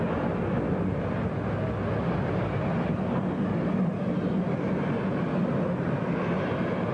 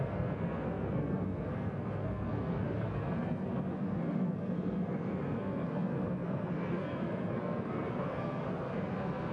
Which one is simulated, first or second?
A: second